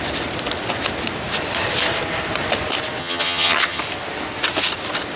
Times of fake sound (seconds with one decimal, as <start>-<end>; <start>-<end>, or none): 3.0-3.8